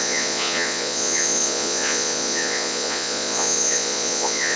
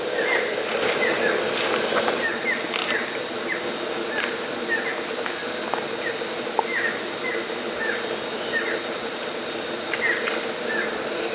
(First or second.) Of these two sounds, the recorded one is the second